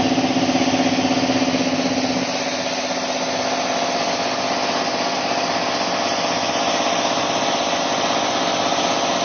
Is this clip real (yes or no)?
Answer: yes